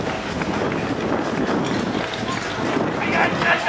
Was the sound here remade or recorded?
recorded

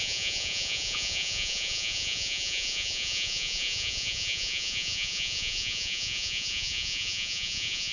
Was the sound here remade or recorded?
remade